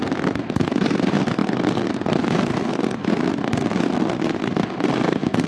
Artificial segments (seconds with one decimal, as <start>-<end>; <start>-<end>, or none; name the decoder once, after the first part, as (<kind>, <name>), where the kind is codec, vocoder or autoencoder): 0.0-5.5 (codec, SNAC)